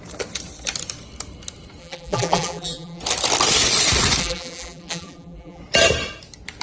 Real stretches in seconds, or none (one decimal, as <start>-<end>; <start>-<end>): 0.0-1.8; 3.0-4.2; 5.6-6.6